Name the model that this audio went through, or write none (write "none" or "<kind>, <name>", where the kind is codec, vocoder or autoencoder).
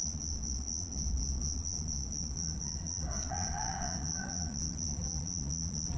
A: vocoder, Vocos